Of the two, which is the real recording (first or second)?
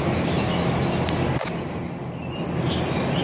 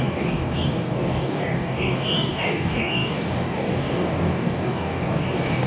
first